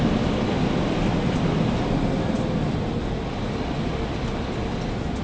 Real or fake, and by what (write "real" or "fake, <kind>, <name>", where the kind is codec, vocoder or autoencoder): real